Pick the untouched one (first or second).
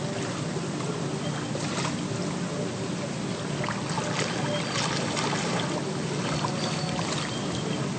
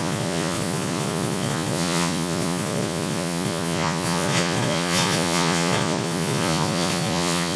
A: first